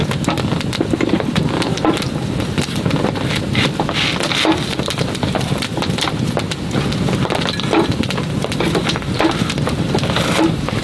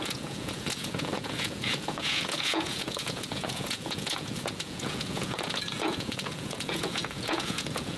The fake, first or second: second